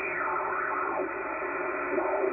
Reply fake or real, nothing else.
real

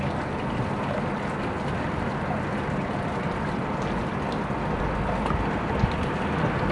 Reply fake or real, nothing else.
real